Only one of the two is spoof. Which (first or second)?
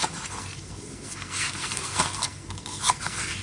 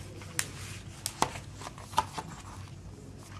first